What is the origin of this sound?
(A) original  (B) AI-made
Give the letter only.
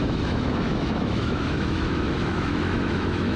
B